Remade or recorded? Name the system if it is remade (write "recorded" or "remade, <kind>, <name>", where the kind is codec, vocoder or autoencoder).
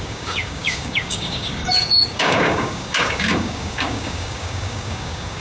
remade, codec, DAC